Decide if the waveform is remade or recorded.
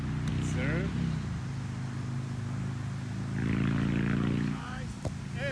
recorded